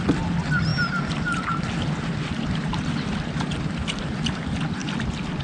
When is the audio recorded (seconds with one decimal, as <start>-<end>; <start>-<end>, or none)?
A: 0.0-5.4